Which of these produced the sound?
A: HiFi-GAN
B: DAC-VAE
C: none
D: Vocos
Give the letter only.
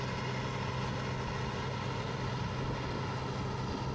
C